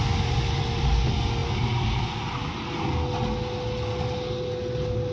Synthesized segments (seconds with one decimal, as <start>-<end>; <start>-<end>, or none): none